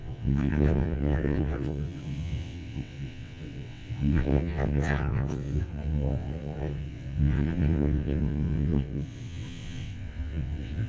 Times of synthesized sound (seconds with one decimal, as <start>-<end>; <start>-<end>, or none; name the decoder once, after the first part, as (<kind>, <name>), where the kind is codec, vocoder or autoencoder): 0.0-10.9 (vocoder, WaveNeXt)